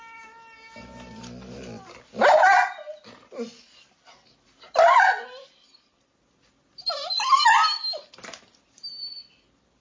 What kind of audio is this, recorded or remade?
recorded